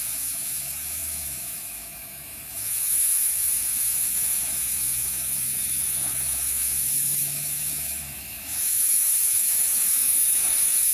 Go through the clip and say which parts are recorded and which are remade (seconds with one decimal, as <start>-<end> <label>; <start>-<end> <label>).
0.0-10.9 remade